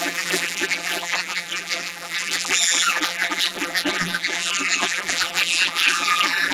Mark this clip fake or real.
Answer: fake